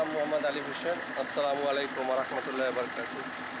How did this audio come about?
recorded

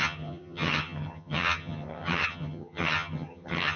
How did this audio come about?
remade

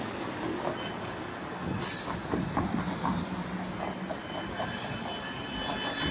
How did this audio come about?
recorded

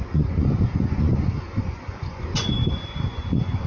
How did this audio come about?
remade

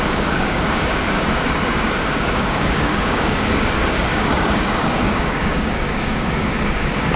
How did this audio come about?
remade